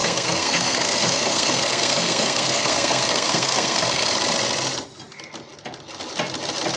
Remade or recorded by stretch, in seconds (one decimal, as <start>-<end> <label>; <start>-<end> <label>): 0.0-4.1 remade; 4.1-6.8 recorded